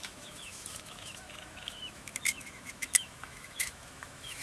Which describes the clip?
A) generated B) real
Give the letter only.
A